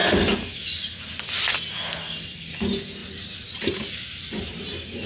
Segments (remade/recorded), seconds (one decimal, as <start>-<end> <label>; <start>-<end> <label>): 0.0-3.0 recorded; 3.0-3.9 remade; 3.9-5.1 recorded